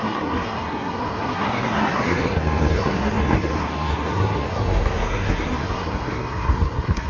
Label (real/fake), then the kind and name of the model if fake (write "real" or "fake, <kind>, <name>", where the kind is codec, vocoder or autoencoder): fake, codec, SNAC